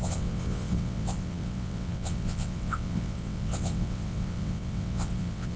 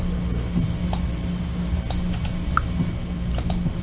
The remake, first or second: first